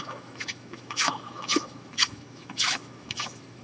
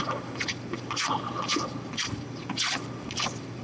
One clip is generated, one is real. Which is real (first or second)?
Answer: second